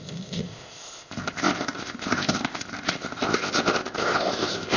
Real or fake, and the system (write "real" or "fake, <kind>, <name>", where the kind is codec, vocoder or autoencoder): fake, codec, ZipCodec